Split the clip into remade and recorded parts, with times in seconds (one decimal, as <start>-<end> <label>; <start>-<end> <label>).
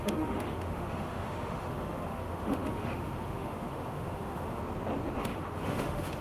0.0-4.6 remade; 4.6-5.2 recorded; 5.2-6.2 remade